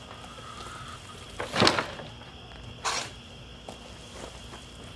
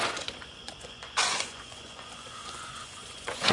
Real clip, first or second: first